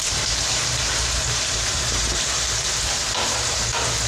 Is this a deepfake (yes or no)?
yes